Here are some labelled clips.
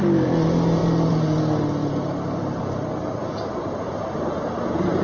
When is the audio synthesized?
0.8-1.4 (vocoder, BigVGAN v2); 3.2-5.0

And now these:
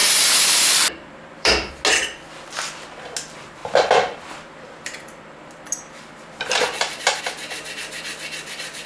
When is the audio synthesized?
0.0-1.7 (vocoder, BigVGAN v2); 3.6-7.2

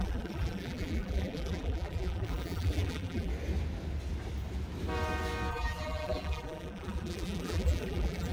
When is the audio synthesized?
0.0-3.3 (vocoder, BigVGAN v2); 5.5-8.3

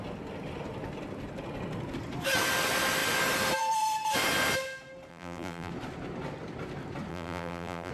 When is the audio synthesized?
5.1-5.7 (vocoder, BigVGAN v2); 7.1-7.9

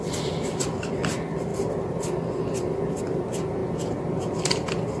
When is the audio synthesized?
none

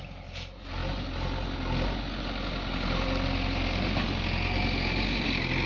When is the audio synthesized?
none